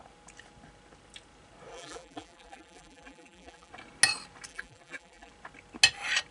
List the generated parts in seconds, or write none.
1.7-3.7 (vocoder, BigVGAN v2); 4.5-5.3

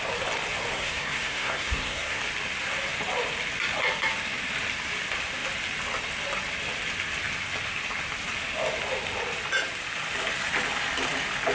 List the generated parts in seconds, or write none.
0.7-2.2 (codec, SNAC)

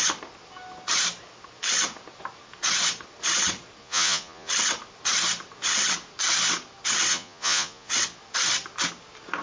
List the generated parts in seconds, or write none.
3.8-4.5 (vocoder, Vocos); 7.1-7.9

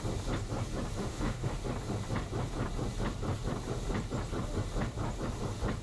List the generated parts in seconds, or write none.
1.0-1.5 (autoencoder, DAC-VAE)

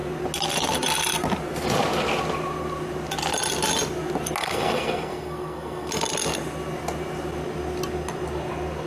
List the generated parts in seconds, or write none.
4.4-5.9 (codec, SNAC)

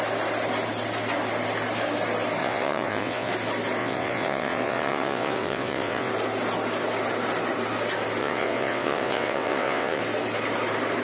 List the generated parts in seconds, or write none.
2.4-3.3 (vocoder, WaveNeXt); 3.8-6.1; 8.2-10.0

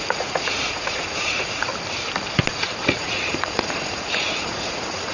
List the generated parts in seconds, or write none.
0.0-1.7 (vocoder, Vocos); 3.0-5.1